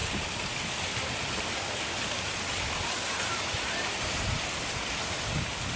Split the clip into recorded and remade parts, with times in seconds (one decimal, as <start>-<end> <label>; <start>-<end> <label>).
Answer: 0.0-5.8 recorded